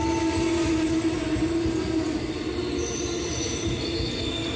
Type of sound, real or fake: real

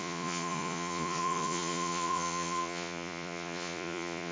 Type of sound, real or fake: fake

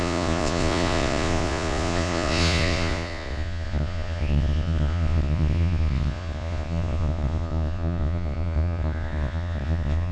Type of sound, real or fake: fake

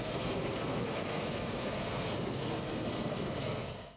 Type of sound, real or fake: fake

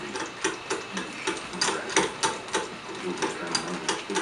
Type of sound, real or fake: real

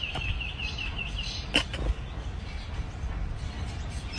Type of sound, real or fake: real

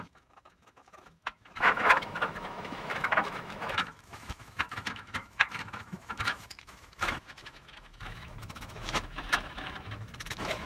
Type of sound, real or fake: fake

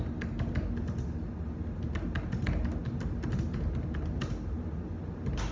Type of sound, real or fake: real